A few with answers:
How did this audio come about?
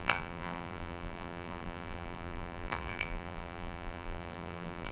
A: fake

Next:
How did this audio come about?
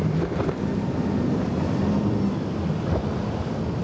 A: real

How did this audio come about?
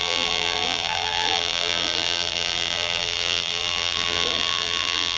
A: fake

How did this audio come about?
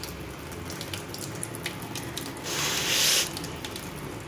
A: real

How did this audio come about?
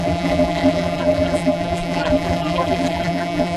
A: fake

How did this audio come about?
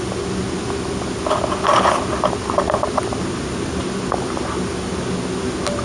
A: real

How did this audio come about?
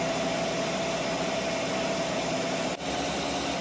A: real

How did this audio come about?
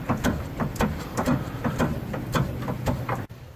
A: fake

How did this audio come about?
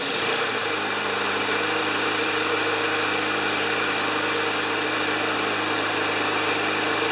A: fake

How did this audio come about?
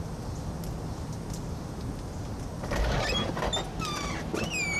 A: real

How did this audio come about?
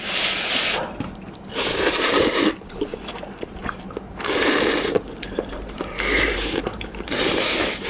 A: fake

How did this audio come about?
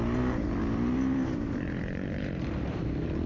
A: fake